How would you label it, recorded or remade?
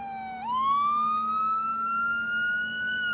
recorded